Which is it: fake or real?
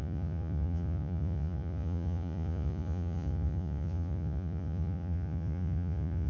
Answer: fake